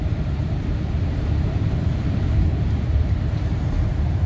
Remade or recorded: remade